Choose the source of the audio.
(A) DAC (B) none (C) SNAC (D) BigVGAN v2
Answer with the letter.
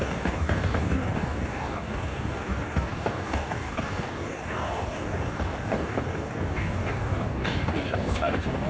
A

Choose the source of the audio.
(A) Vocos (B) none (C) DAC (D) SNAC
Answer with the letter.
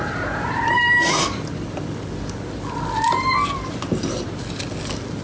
B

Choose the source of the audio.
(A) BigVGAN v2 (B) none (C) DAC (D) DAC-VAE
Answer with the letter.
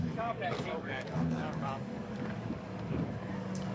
C